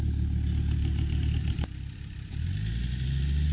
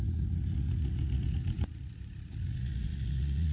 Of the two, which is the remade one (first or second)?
second